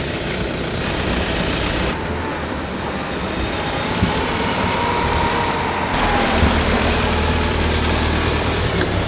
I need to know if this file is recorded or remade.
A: remade